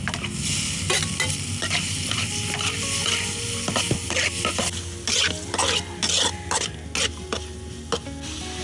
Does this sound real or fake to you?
real